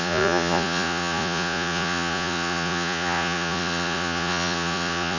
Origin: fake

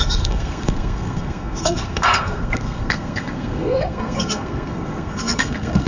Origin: fake